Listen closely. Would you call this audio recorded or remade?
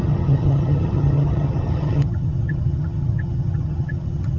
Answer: remade